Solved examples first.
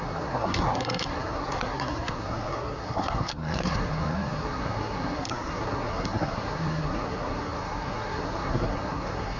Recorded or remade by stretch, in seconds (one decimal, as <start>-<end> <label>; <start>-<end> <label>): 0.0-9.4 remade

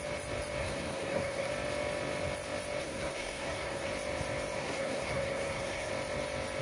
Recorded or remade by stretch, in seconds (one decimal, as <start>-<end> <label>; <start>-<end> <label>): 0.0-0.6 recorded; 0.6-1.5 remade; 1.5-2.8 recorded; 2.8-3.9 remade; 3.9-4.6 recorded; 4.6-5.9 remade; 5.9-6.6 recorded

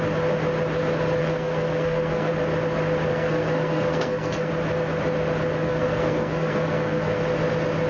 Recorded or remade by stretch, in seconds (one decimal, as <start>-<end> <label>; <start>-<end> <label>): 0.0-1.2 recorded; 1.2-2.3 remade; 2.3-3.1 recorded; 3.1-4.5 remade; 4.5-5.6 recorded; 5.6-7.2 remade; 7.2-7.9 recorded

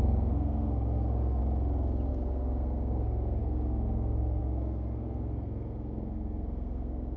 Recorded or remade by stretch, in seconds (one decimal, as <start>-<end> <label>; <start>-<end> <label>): 0.0-1.4 remade; 1.4-2.1 recorded; 2.1-7.2 remade